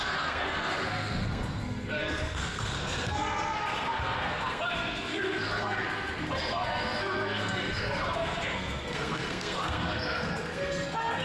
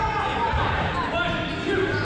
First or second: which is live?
second